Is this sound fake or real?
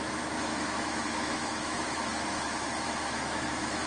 fake